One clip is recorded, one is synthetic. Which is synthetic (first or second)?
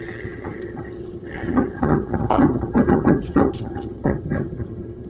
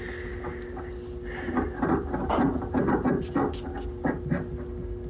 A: first